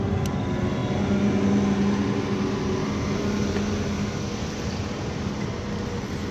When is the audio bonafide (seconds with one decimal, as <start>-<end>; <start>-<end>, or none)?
0.0-6.3